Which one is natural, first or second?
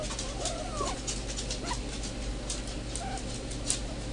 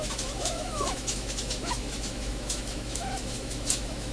first